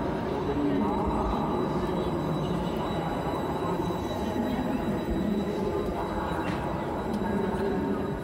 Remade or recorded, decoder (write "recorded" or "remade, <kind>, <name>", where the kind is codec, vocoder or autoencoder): remade, vocoder, BigVGAN v2